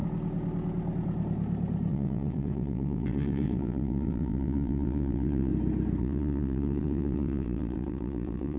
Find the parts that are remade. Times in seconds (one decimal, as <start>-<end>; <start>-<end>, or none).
1.9-5.5; 6.0-8.6